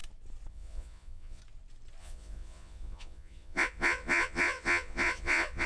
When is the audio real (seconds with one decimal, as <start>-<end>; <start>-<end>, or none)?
0.0-0.5; 1.4-2.0